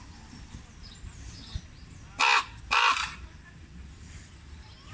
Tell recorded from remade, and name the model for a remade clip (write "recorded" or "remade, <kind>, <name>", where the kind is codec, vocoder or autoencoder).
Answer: remade, vocoder, BigVGAN v2